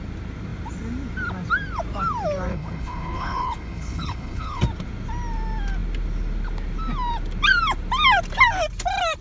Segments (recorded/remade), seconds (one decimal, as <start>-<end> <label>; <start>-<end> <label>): 0.0-2.5 recorded; 2.5-4.6 remade; 4.6-9.2 recorded

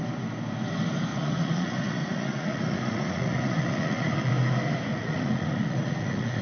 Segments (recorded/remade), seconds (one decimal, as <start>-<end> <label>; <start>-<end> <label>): 0.0-1.1 recorded; 1.1-4.3 remade; 4.3-4.9 recorded; 4.9-6.4 remade